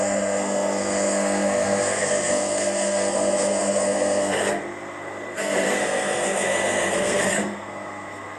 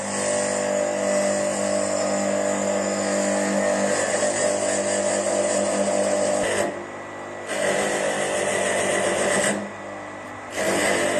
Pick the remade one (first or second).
first